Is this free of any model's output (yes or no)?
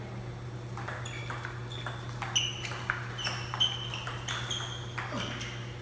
yes